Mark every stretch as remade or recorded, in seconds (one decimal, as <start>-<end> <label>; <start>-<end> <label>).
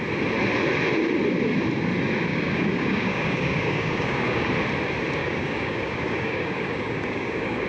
0.0-2.3 recorded; 2.3-4.5 remade; 4.5-5.2 recorded; 5.2-7.7 remade